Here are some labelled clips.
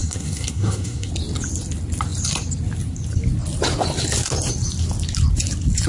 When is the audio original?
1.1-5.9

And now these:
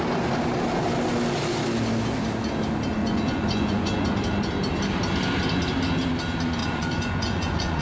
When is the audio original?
0.0-3.0; 4.1-6.6